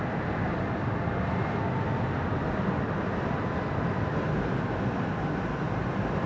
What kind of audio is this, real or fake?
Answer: real